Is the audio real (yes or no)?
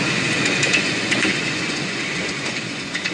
no